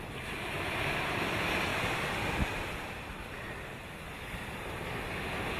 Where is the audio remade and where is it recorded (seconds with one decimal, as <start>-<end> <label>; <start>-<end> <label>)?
0.0-5.6 recorded